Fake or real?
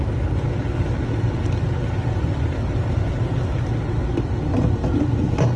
real